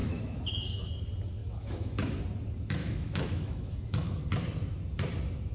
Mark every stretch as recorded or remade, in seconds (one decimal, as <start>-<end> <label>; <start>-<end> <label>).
0.0-0.9 remade; 0.9-1.4 recorded; 1.4-2.2 remade; 2.2-2.8 recorded; 2.8-4.2 remade; 4.2-5.5 recorded